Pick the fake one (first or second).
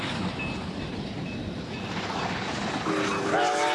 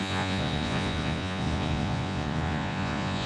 second